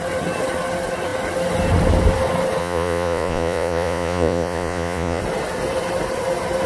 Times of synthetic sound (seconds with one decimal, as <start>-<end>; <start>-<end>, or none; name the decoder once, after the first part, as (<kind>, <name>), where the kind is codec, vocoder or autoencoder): 2.6-5.2 (vocoder, Vocos)